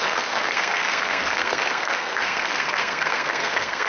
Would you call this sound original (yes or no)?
no